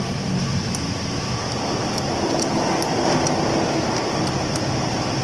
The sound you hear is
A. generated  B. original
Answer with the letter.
B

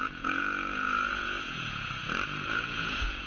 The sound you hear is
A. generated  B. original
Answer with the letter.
A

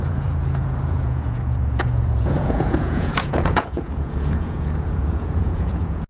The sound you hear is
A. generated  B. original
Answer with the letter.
A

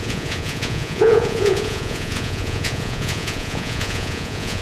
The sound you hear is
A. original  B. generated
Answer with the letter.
B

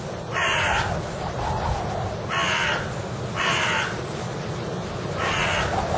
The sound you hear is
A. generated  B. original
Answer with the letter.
B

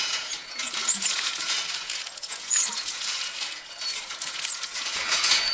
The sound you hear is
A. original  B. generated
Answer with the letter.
B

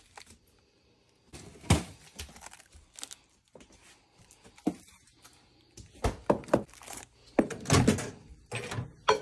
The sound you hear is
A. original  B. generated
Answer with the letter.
A